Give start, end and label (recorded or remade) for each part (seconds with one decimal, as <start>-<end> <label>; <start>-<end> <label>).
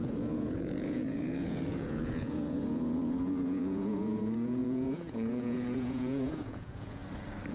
0.0-7.0 remade; 7.0-7.5 recorded